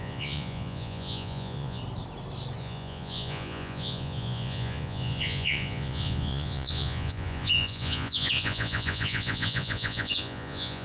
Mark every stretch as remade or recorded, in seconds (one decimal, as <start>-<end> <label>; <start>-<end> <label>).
0.0-1.8 remade; 1.8-2.6 recorded; 2.6-10.8 remade